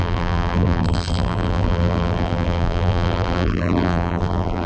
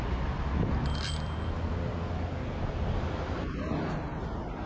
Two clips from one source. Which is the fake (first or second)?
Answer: first